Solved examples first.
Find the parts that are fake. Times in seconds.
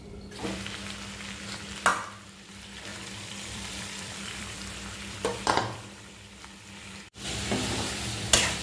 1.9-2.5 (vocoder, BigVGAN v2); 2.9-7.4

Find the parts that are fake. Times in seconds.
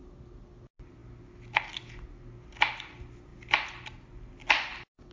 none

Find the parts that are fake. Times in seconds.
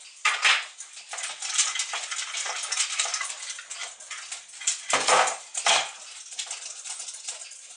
none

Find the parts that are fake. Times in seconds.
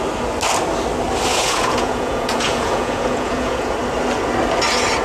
1.3-3.7 (vocoder, Vocos)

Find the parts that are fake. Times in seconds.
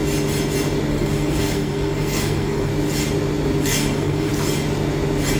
0.9-2.7 (codec, SNAC); 3.6-4.3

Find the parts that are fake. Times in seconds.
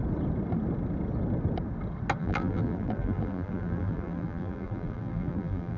2.2-5.8 (vocoder, BigVGAN v2)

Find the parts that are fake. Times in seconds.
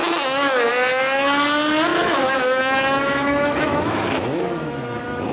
0.0-0.7 (autoencoder, DAC-VAE); 1.9-5.3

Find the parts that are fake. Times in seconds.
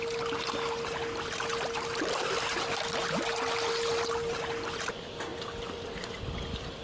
none